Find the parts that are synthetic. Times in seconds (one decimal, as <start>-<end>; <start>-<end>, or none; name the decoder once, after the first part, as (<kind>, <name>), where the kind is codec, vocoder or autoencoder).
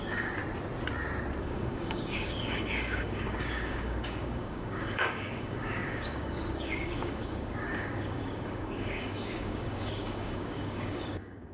0.0-0.4 (codec, DAC); 1.4-11.5